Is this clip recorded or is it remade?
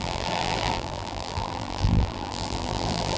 remade